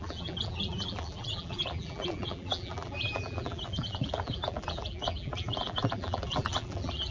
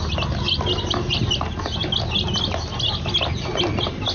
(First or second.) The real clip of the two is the second